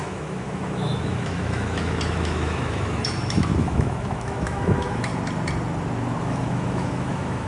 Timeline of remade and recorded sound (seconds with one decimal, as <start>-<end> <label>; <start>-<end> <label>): 0.0-5.1 remade; 5.1-6.2 recorded; 6.2-7.5 remade